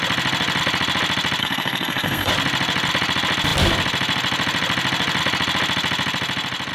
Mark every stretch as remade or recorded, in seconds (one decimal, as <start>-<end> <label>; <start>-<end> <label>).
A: 0.0-1.4 recorded; 1.4-2.3 remade; 2.3-6.7 recorded